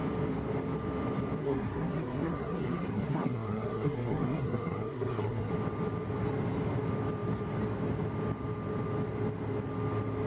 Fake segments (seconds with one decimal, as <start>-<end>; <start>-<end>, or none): 1.4-5.5

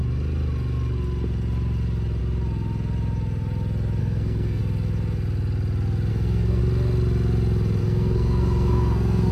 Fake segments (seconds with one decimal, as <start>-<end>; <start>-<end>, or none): 4.0-4.6; 6.1-6.6; 7.8-9.3

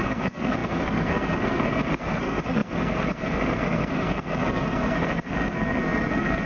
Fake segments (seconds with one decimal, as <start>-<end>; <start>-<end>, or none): 0.0-6.5

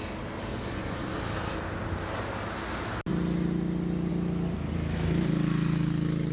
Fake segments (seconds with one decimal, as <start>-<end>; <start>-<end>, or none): 0.5-1.2

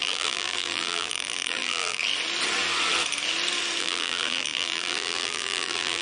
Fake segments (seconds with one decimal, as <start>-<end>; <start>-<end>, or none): 0.0-2.0; 3.8-6.0

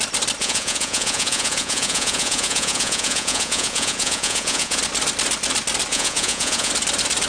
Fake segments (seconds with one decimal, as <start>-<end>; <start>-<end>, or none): 0.4-4.8; 5.9-6.7

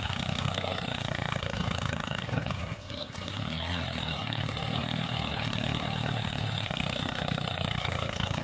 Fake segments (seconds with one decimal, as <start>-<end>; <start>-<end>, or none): 0.0-8.4

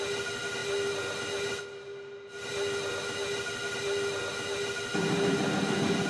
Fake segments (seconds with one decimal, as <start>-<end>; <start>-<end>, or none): none